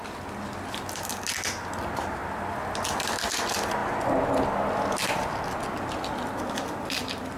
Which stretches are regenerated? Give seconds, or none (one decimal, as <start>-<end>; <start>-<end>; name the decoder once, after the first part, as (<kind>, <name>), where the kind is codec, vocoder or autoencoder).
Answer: none